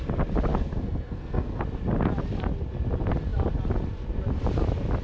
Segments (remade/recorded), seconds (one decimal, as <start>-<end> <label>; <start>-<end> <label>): 0.0-0.5 recorded; 0.5-1.6 remade; 1.6-5.0 recorded